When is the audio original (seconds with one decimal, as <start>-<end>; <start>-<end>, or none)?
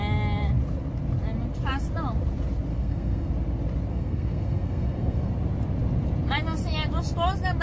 0.0-2.7; 3.3-3.9; 5.3-7.6